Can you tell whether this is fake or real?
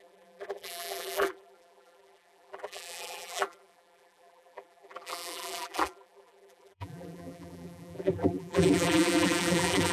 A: fake